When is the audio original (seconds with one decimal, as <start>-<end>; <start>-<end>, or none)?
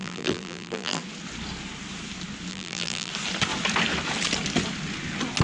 1.0-2.5; 3.1-5.4